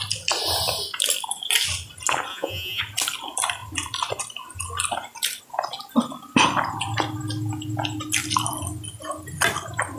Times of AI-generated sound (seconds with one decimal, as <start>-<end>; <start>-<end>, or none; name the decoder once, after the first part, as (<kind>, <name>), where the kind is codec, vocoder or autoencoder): 2.3-2.8 (vocoder, Vocos)